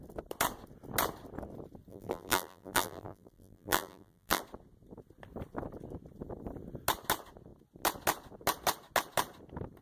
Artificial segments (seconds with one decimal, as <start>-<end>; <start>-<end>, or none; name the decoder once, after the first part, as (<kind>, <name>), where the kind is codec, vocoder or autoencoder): 1.9-4.4 (vocoder, BigVGAN v2)